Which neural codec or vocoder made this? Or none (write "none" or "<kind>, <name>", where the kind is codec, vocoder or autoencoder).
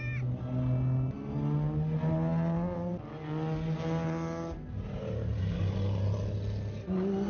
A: none